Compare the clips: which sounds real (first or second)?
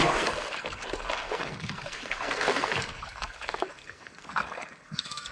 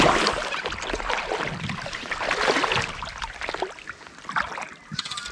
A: second